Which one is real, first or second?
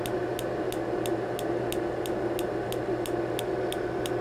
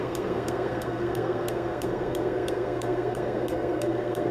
first